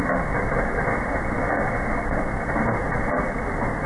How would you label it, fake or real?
real